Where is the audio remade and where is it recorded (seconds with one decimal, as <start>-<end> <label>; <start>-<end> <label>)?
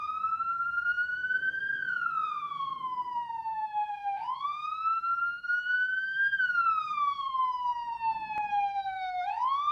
0.0-7.7 remade; 7.7-8.5 recorded; 8.5-9.7 remade